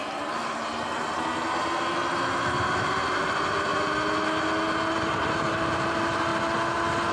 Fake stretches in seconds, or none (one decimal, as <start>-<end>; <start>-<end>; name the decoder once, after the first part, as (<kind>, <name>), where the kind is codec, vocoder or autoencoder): 2.8-3.7 (vocoder, BigVGAN v2); 4.9-6.3